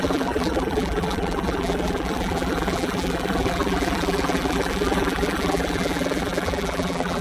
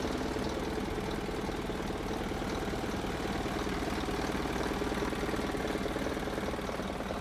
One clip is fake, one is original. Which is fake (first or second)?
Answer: first